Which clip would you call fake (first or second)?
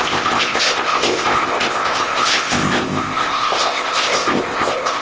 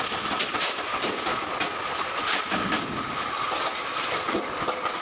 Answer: first